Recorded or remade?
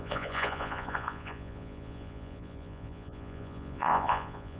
remade